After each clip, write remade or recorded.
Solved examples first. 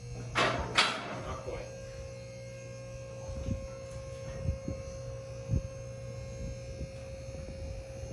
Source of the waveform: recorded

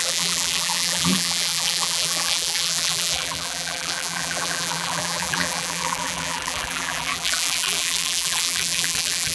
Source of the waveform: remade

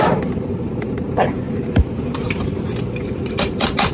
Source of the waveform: remade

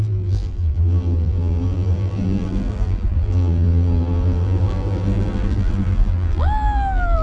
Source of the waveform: remade